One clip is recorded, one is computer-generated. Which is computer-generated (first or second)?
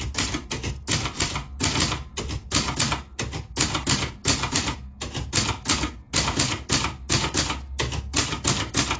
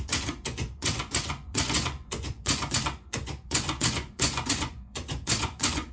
second